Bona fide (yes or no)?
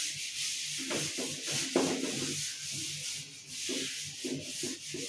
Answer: yes